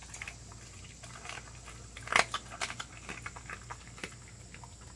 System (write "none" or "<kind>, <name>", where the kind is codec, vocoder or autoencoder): none